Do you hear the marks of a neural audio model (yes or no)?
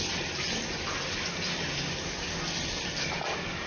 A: no